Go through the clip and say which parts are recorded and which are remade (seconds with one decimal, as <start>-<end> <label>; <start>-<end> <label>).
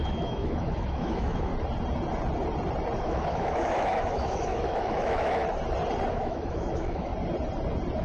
0.0-1.5 remade; 1.5-3.0 recorded; 3.0-5.4 remade; 5.4-6.1 recorded; 6.1-7.1 remade; 7.1-8.0 recorded